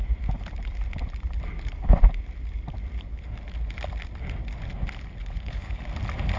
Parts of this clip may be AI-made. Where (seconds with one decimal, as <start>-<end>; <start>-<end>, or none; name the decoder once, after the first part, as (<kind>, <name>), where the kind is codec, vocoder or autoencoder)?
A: 5.2-5.8 (codec, HILCodec)